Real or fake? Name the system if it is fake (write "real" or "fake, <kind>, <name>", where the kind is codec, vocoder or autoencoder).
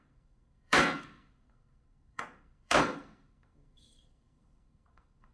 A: fake, codec, SNAC